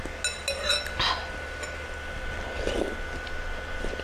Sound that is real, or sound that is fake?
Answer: real